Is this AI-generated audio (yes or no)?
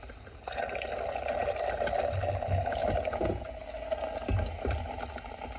no